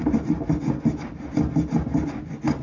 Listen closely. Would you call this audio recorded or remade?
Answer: recorded